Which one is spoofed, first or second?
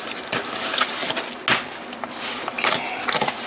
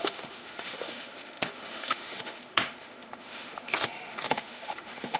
second